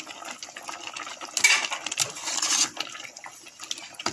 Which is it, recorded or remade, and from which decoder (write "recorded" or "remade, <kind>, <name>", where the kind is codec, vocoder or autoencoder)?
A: recorded